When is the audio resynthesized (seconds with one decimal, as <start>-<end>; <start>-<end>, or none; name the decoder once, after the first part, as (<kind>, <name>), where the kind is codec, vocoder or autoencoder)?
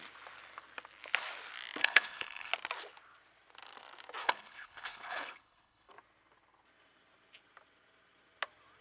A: 1.8-2.5 (codec, HILCodec); 4.2-5.9